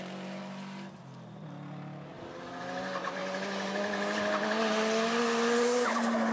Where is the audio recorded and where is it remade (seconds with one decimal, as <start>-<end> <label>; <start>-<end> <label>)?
0.0-6.3 recorded